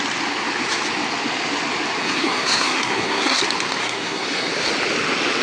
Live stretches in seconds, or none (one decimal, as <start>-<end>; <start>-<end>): 0.0-2.0; 3.4-3.8; 4.5-5.4